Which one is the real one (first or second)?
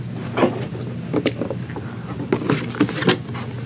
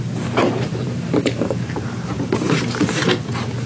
first